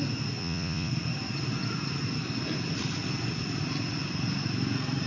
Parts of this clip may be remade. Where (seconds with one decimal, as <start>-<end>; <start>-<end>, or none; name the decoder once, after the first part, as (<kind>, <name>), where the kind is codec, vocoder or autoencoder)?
0.4-0.9 (vocoder, Vocos)